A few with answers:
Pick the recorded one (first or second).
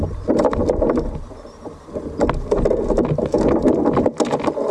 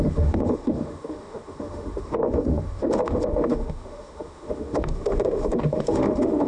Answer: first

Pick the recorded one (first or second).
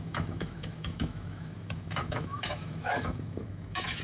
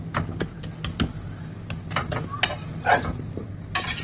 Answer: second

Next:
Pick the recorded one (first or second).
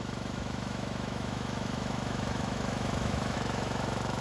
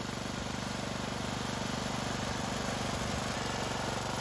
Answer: second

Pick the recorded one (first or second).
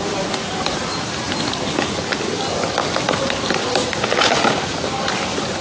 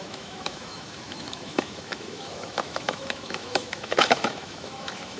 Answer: first